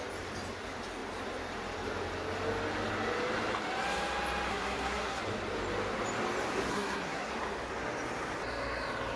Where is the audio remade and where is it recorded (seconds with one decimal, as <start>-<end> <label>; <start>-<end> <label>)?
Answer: 0.0-4.5 recorded; 4.5-5.2 remade; 5.2-6.7 recorded; 6.7-7.3 remade; 7.3-9.2 recorded